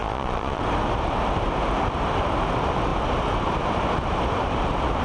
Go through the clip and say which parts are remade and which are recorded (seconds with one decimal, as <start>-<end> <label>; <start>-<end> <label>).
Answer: 0.0-0.6 remade; 0.6-5.0 recorded